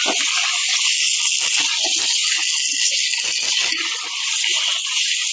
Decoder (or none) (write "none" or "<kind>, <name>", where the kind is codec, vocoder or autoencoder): none